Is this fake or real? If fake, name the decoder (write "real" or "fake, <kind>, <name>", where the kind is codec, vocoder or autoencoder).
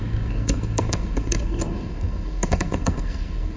fake, codec, SNAC